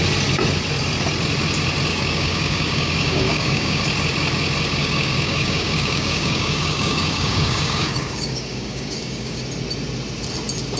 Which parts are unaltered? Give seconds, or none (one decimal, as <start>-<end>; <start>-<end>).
0.0-1.9; 3.8-4.8; 9.4-10.8